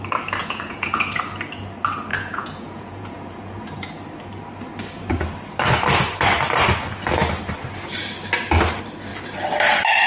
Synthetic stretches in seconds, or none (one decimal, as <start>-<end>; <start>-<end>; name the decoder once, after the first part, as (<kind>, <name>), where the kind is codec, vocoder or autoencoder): 0.4-1.2 (vocoder, Vocos); 2.1-3.9